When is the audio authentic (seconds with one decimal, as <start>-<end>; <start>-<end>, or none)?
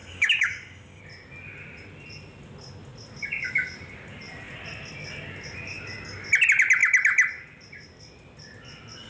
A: 1.0-9.1